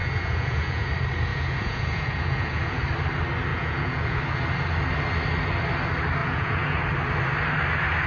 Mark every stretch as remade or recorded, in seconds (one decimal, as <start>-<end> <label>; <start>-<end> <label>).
0.0-0.9 remade; 0.9-1.3 recorded; 1.3-2.8 remade; 2.8-3.5 recorded; 3.5-4.2 remade; 4.2-6.2 recorded; 6.2-6.8 remade; 6.8-8.1 recorded